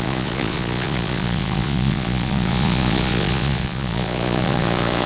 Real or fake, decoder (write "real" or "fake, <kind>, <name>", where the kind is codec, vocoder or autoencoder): fake, vocoder, Vocos